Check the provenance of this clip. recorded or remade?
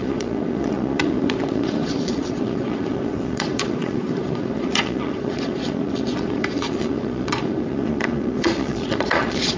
remade